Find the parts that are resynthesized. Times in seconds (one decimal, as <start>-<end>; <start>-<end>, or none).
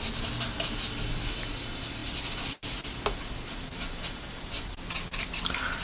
none